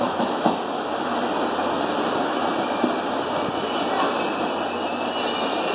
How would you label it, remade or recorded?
recorded